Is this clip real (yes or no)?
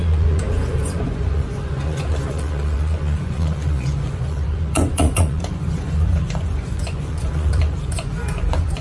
no